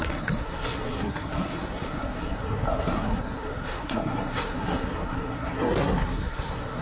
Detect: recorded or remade remade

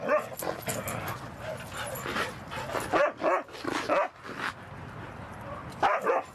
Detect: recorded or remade recorded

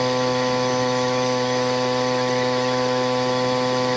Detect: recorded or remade remade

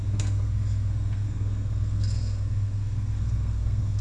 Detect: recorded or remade remade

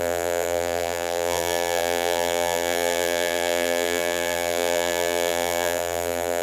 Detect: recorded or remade remade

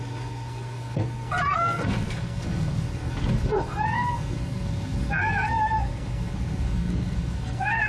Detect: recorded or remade remade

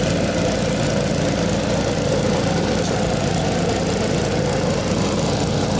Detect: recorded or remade recorded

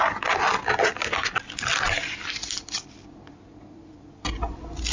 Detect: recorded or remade recorded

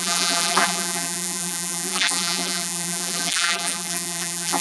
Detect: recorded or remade remade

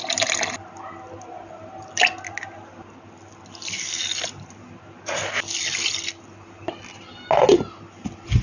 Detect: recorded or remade recorded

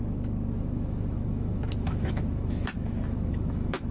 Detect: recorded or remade remade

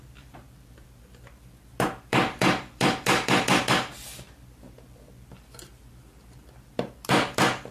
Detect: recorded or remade remade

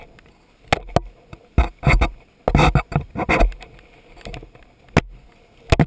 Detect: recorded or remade recorded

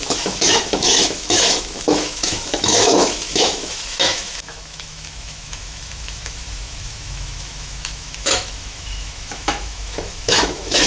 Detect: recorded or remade remade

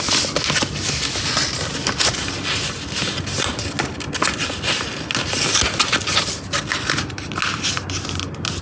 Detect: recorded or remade recorded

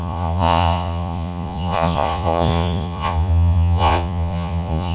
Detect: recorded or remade remade